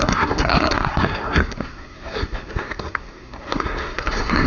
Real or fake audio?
fake